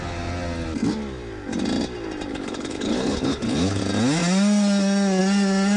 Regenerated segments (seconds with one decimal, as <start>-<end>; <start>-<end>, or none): 2.3-3.8

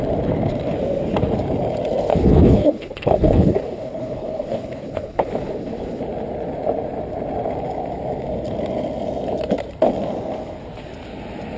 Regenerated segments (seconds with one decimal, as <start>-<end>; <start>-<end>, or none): 2.1-6.0